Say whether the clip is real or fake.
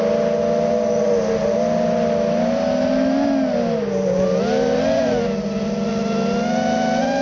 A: real